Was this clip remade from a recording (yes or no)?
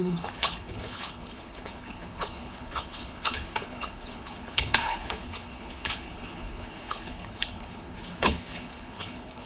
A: yes